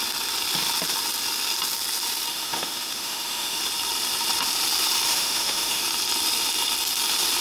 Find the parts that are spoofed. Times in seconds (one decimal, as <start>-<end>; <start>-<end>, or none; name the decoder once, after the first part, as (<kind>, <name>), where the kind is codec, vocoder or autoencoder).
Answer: 2.3-3.6 (autoencoder, DAC-VAE); 5.1-5.8